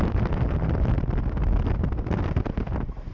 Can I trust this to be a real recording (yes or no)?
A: yes